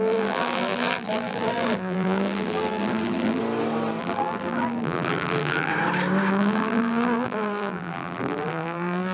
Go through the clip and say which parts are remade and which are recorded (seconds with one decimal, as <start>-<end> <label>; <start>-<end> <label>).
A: 0.0-3.4 remade; 3.4-4.0 recorded; 4.0-5.7 remade; 5.7-6.3 recorded; 6.3-9.1 remade